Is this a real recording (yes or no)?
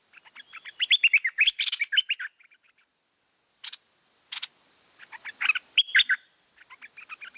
yes